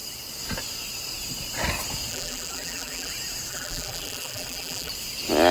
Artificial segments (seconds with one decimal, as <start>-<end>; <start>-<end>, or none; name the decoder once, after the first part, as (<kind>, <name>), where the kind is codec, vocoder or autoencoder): 2.1-3.1 (vocoder, BigVGAN v2); 3.5-4.9